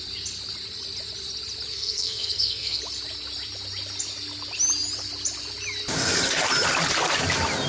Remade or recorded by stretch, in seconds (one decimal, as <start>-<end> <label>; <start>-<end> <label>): 0.0-1.7 recorded; 1.7-2.8 remade; 2.8-7.7 recorded